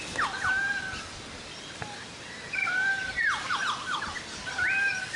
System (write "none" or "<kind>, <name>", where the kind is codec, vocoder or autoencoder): none